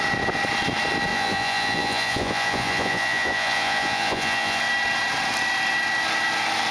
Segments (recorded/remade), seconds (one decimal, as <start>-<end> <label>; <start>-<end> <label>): 0.0-1.1 recorded; 1.1-4.6 remade; 4.6-6.7 recorded